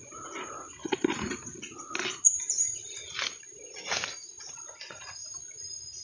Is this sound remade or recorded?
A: recorded